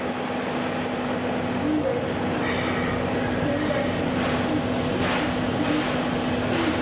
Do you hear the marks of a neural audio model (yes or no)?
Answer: no